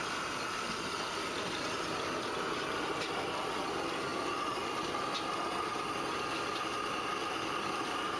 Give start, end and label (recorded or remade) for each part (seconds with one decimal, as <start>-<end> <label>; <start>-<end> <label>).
0.0-8.2 recorded